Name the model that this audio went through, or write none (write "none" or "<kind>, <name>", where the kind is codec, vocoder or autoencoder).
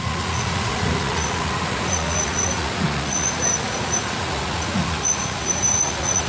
vocoder, Vocos